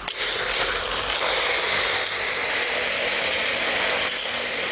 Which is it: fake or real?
real